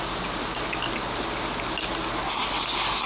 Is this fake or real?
real